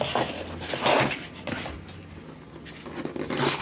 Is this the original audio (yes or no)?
yes